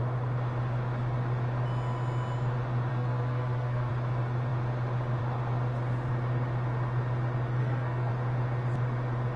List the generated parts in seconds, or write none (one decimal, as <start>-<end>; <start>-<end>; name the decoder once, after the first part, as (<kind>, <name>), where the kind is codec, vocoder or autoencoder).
2.9-3.9 (codec, SNAC); 7.6-8.1

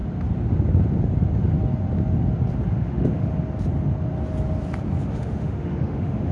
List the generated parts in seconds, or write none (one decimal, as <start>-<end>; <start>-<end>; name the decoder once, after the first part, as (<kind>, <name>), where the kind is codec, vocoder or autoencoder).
2.8-3.3 (autoencoder, DAC-VAE); 5.1-6.3

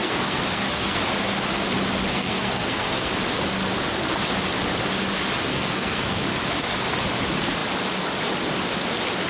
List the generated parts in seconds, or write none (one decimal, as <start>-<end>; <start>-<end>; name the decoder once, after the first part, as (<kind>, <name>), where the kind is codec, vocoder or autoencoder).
0.0-1.0 (codec, SNAC); 2.1-3.1; 5.5-6.2

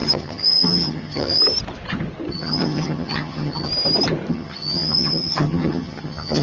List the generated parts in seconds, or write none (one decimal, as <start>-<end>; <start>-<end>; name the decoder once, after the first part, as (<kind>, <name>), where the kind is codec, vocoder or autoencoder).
0.0-1.4 (vocoder, HiFi-GAN); 2.3-3.7; 4.3-6.4

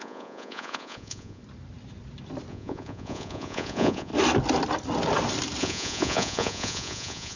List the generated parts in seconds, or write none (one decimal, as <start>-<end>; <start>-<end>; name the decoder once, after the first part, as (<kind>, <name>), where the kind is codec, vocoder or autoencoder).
0.0-1.4 (vocoder, Vocos); 2.5-4.1; 5.6-7.4

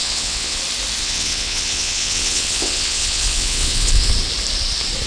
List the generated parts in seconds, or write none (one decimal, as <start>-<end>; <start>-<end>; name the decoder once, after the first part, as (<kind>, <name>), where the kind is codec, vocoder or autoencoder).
0.0-0.6 (vocoder, WaveNeXt); 1.0-4.1

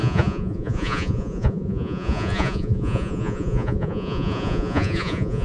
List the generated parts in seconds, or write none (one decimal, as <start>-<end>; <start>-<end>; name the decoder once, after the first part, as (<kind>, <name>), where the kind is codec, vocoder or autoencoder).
0.0-5.4 (vocoder, Vocos)

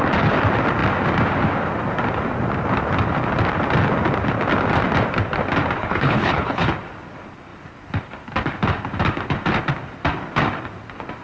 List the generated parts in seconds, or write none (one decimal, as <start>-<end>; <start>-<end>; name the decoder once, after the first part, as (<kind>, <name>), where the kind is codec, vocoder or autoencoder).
5.8-6.7 (codec, HILCodec)